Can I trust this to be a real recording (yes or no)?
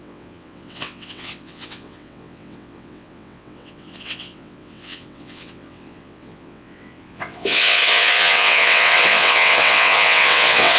no